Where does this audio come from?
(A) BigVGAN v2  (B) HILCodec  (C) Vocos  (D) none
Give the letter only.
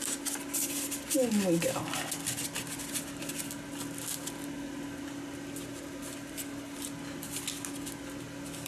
D